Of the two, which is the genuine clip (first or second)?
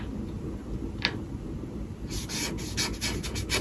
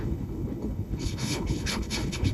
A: first